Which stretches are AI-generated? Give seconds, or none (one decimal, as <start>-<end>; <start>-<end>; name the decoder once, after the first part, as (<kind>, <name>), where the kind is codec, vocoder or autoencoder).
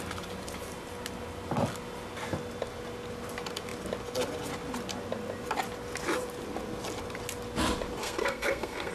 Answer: 8.0-8.9 (codec, SNAC)